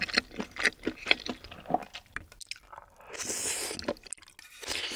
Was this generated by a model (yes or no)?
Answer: no